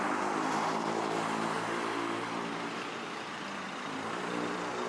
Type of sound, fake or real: fake